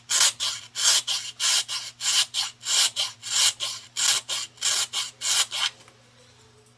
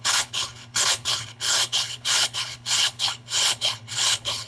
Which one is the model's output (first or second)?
second